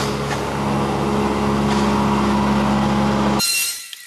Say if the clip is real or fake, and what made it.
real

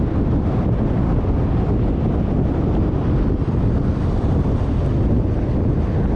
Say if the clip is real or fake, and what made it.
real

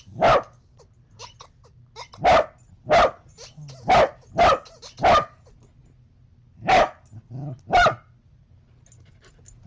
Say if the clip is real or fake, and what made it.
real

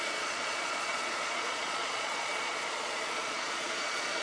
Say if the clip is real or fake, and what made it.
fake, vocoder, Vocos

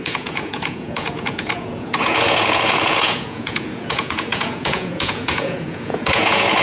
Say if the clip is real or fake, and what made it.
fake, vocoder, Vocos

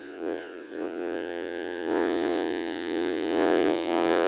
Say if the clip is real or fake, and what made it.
fake, vocoder, Vocos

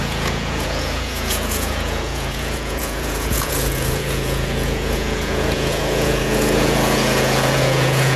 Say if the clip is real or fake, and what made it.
fake, vocoder, Vocos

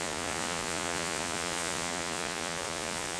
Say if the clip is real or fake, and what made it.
fake, vocoder, Vocos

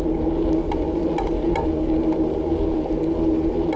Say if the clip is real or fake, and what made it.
real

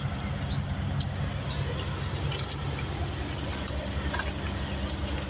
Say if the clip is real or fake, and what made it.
real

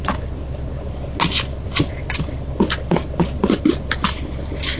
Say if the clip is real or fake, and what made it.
real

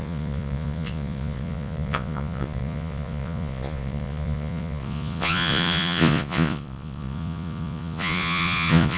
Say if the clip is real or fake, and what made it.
fake, vocoder, Vocos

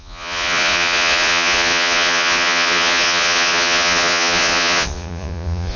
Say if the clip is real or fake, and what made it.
fake, vocoder, Vocos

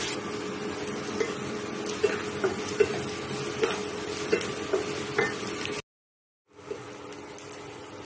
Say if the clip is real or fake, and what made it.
real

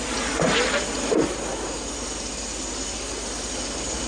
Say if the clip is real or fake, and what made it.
real